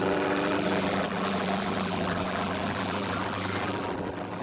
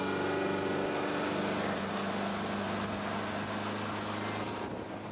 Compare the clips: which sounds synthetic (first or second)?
first